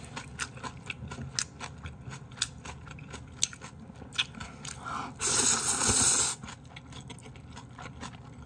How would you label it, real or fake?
real